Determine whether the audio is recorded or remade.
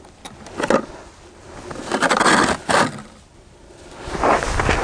recorded